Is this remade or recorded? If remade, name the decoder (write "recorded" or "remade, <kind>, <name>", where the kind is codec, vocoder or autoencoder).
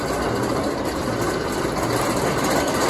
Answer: recorded